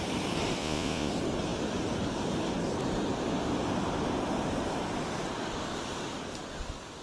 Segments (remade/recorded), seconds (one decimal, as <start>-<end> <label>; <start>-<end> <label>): 0.0-0.6 recorded; 0.6-1.1 remade; 1.1-7.0 recorded